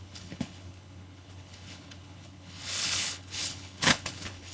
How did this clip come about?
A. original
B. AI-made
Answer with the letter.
B